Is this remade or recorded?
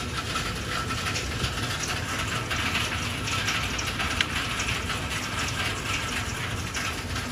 recorded